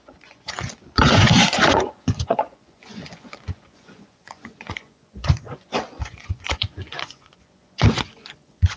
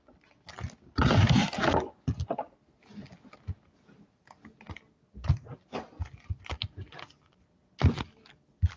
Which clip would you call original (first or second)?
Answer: second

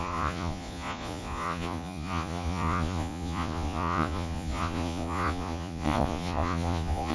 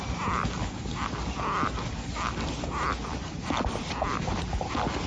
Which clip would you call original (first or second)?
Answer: second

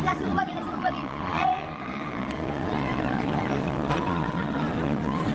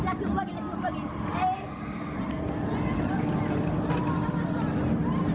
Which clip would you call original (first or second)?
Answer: second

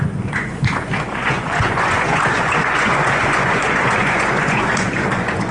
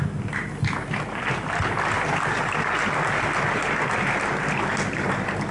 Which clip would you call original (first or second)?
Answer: second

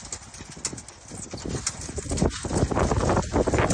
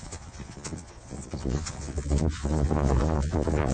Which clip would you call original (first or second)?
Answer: first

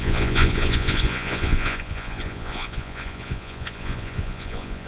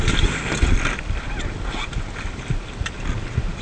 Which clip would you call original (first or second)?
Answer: second